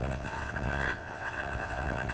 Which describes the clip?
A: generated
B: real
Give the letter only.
A